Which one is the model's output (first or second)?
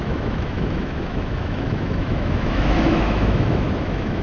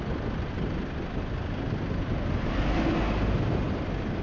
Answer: first